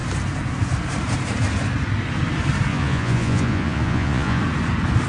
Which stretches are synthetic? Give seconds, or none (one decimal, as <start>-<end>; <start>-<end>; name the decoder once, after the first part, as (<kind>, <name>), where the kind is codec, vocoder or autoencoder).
2.7-4.4 (vocoder, Vocos)